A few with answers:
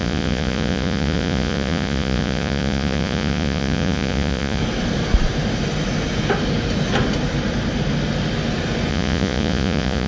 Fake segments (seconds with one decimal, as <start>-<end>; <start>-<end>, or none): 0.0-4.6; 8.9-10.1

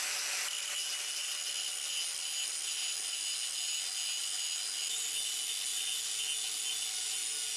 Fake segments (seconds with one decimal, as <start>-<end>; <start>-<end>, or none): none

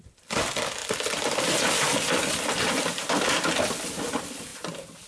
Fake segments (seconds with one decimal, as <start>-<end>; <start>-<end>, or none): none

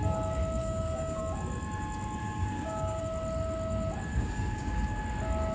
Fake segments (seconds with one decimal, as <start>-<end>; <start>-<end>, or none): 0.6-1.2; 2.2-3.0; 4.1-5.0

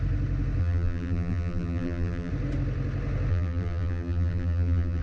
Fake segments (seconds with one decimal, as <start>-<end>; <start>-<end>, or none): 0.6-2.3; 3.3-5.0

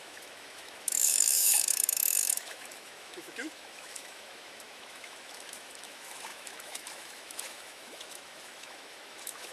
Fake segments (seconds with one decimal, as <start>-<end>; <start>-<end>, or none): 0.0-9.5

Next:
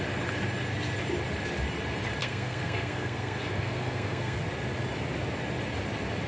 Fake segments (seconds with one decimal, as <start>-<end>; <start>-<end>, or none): 2.2-4.4